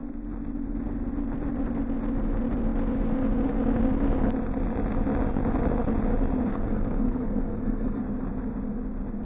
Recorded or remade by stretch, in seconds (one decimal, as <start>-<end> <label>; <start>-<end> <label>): 0.0-6.5 recorded; 6.5-8.0 remade; 8.0-9.2 recorded